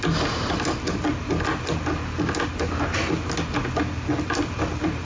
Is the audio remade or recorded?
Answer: recorded